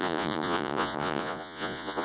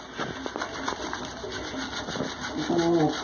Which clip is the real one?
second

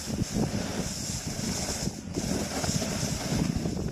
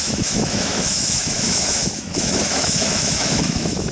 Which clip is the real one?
first